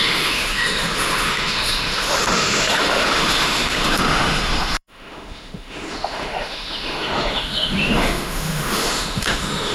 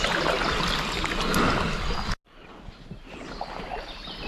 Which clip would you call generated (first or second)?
first